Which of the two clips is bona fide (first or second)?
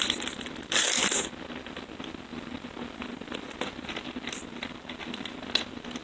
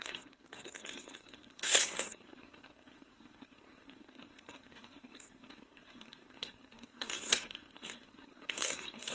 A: first